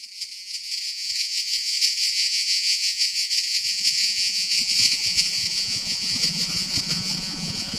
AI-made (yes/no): yes